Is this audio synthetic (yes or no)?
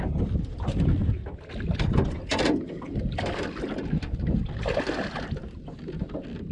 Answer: no